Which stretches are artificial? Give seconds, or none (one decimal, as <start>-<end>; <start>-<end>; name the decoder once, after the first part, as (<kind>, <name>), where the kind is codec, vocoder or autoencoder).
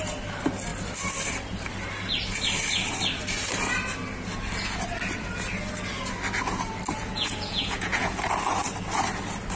7.0-8.1 (vocoder, Vocos)